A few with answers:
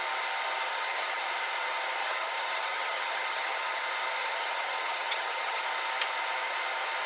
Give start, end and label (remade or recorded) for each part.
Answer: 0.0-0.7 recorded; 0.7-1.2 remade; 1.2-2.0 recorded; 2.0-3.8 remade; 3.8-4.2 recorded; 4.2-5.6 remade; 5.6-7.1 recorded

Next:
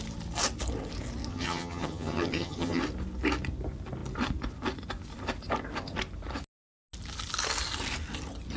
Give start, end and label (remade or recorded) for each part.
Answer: 0.0-1.3 recorded; 1.3-2.8 remade; 2.8-8.6 recorded

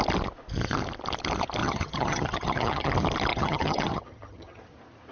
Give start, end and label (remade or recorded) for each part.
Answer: 0.0-1.6 recorded; 1.6-2.9 remade; 2.9-3.3 recorded; 3.3-4.6 remade; 4.6-5.1 recorded

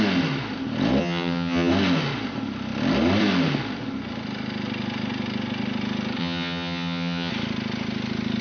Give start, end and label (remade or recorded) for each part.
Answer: 0.0-1.0 recorded; 1.0-1.7 remade; 1.7-6.2 recorded; 6.2-7.3 remade; 7.3-8.4 recorded

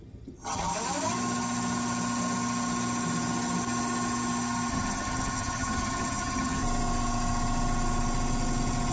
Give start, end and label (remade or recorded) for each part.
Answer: 0.0-0.7 remade; 0.7-4.7 recorded; 4.7-6.6 remade; 6.6-8.9 recorded

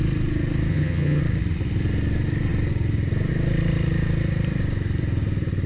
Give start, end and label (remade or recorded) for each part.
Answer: 0.0-0.7 recorded; 0.7-1.2 remade; 1.2-5.7 recorded

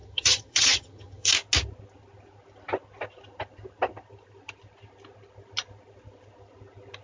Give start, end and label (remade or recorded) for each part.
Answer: 0.0-1.3 remade; 1.3-7.0 recorded